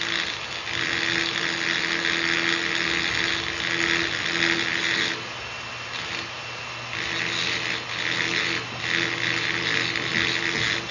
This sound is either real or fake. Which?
real